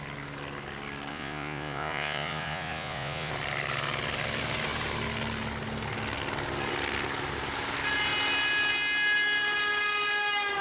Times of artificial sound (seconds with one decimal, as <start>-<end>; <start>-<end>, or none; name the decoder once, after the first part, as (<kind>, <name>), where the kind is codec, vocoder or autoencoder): 1.1-3.3 (vocoder, Vocos)